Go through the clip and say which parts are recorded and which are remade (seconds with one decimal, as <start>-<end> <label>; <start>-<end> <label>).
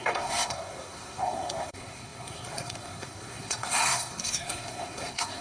0.0-5.4 remade